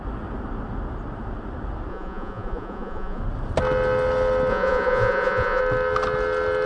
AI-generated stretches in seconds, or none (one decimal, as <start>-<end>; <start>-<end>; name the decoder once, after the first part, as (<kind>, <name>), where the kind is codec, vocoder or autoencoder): 1.9-3.2 (vocoder, Vocos); 4.5-5.6